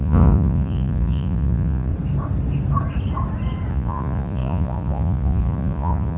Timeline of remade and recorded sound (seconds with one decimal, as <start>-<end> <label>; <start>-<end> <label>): 0.0-1.9 remade; 1.9-3.7 recorded; 3.7-6.2 remade